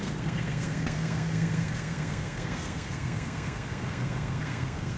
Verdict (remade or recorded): remade